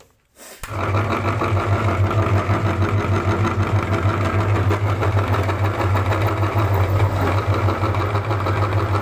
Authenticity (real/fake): real